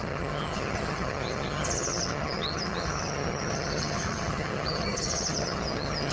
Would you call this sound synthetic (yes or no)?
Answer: yes